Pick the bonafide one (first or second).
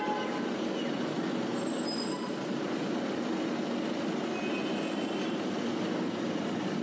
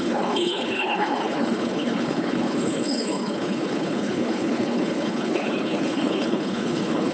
first